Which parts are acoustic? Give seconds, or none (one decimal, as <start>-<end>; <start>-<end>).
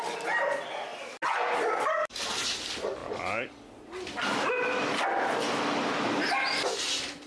0.0-3.0; 3.5-7.3